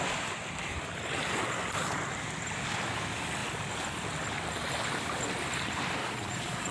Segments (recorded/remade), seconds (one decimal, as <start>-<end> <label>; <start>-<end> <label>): 0.0-6.0 recorded; 6.0-6.7 remade